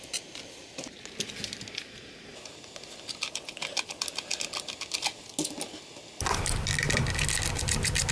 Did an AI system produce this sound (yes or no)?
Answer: no